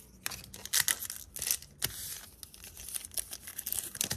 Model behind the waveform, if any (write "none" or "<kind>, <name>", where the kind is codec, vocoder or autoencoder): none